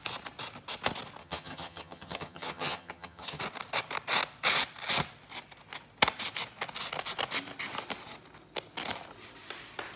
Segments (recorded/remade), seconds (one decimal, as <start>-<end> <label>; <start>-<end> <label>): 0.0-1.2 recorded; 1.2-3.4 remade; 3.4-10.0 recorded